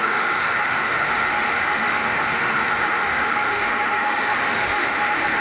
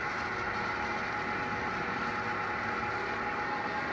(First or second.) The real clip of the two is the second